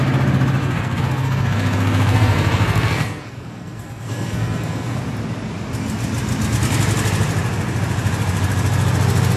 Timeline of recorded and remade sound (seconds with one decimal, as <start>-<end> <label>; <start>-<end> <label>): 0.0-0.6 recorded; 0.6-5.0 remade; 5.0-9.4 recorded